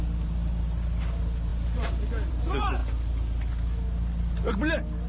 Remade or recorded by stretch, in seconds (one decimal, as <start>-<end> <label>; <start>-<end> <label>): 0.0-5.1 recorded